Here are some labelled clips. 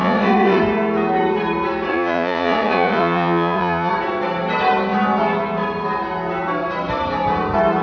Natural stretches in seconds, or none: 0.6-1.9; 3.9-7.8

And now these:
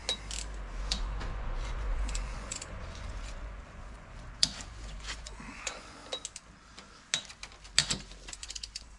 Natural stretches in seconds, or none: 0.0-0.8; 6.0-8.3

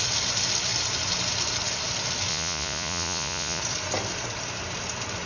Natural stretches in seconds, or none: 0.0-2.3; 3.6-5.3

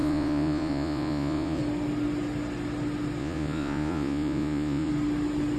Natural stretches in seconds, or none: 1.6-3.2; 4.9-5.6

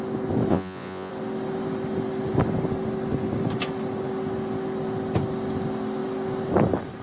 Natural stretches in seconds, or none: 0.0-0.5; 1.1-7.0

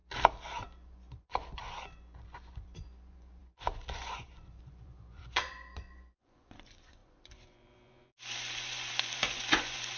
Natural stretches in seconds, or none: 0.0-0.6

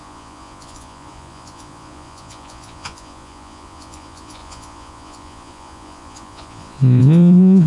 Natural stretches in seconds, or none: none